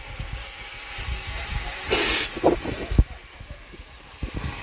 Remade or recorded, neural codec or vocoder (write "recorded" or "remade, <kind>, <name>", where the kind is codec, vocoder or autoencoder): recorded